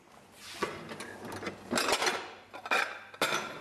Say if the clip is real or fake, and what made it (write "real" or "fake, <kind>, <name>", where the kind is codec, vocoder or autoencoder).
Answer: real